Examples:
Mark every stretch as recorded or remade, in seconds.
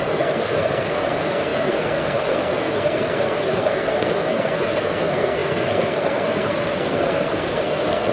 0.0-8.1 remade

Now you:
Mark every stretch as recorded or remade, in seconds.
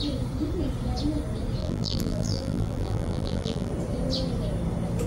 0.0-1.6 recorded; 1.6-3.7 remade; 3.7-5.1 recorded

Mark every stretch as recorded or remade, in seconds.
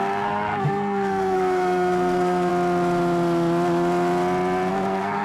0.0-2.5 remade; 2.5-4.7 recorded; 4.7-5.2 remade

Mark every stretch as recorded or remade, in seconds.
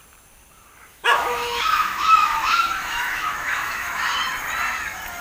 0.0-0.9 recorded; 0.9-4.0 remade; 4.0-5.2 recorded